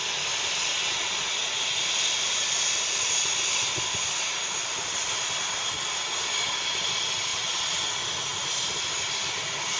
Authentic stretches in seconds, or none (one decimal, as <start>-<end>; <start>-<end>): 0.0-7.3; 7.8-9.8